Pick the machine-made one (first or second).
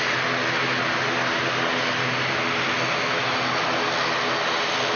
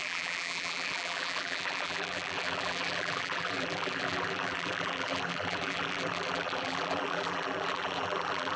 second